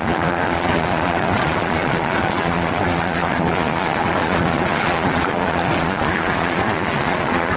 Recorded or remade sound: remade